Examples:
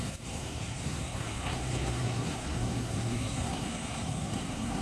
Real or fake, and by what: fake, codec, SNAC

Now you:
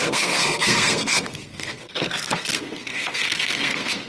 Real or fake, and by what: fake, codec, SNAC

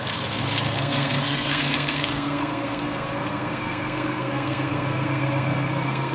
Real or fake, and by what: fake, codec, SNAC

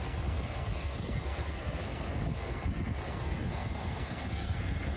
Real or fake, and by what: fake, codec, SNAC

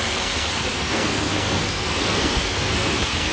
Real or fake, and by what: fake, codec, SNAC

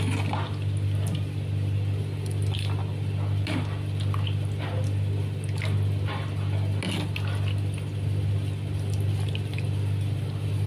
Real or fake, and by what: real